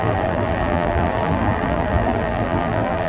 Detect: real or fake fake